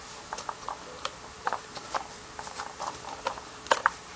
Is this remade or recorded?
remade